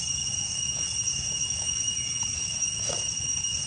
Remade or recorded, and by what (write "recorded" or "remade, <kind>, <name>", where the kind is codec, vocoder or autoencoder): remade, autoencoder, DAC-VAE